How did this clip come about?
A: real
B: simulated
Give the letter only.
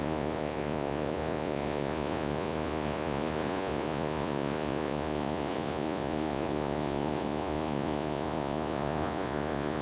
B